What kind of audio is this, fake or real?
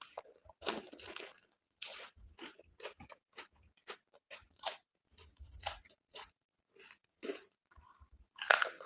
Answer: fake